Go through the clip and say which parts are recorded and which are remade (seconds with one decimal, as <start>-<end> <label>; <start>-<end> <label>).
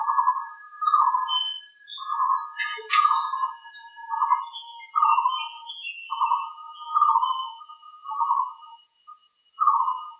0.0-10.2 remade